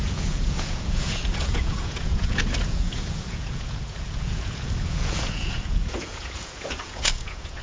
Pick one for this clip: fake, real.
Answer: fake